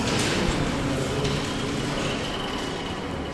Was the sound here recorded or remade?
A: recorded